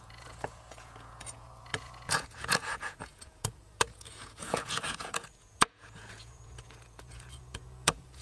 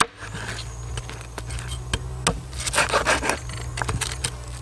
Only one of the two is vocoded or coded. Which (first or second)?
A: first